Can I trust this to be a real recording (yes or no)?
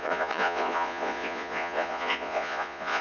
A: no